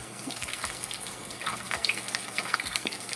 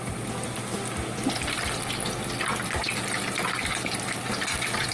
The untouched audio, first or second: second